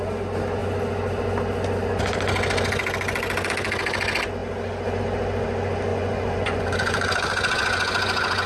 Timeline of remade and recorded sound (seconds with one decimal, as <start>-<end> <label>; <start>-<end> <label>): 0.0-5.9 recorded; 5.9-8.5 remade